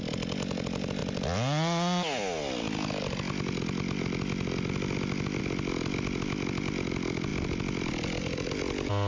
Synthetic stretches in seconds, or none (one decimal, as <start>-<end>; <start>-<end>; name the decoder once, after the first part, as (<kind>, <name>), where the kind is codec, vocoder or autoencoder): none